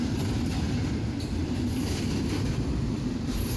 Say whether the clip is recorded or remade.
remade